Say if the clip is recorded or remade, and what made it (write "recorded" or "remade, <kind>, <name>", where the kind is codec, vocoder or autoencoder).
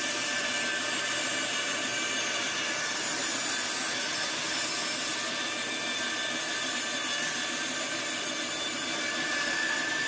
recorded